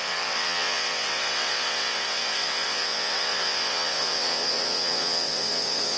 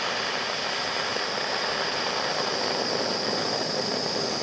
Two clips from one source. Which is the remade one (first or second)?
first